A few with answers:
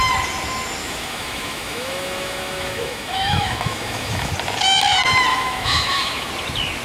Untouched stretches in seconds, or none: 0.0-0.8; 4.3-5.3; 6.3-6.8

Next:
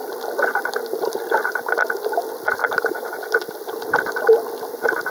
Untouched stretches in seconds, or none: 0.0-2.6; 3.1-5.1

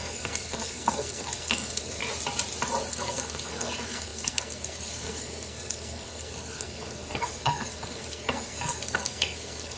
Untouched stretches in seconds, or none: 2.0-2.9

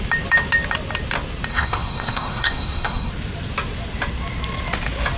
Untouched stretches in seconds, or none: 0.0-1.5; 3.1-5.2

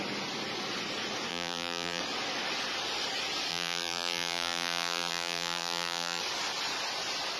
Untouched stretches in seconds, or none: 0.0-1.3; 2.0-3.5; 6.2-7.4

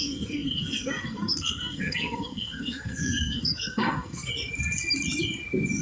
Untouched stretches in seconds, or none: 4.3-5.8

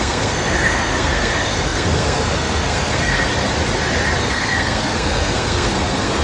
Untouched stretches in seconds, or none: 3.3-4.2

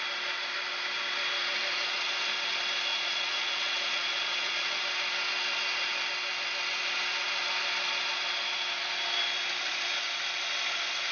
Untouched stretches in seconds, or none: 0.0-2.9; 4.8-11.1